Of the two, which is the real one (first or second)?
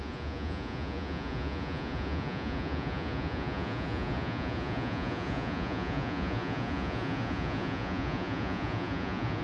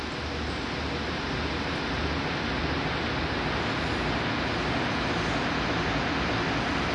second